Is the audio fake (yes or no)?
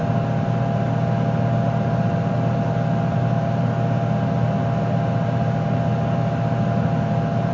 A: no